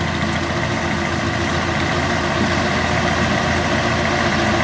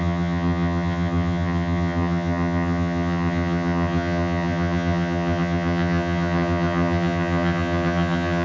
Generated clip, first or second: second